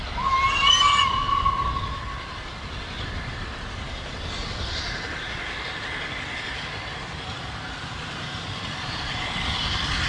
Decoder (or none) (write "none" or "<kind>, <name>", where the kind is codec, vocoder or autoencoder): none